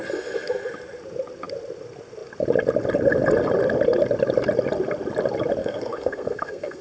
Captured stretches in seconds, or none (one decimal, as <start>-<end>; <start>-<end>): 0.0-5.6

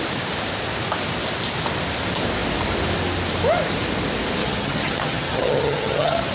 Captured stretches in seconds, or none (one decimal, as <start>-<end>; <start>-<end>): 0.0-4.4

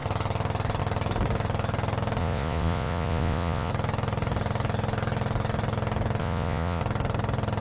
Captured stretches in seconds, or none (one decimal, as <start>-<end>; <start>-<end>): 0.0-2.2; 3.7-6.2; 6.8-7.6

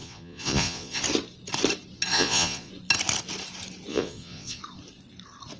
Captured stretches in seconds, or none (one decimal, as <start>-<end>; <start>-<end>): 1.0-2.1; 2.7-3.9; 4.6-5.6